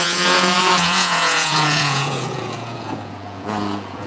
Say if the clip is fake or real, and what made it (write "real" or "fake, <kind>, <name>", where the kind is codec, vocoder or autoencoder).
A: fake, vocoder, Vocos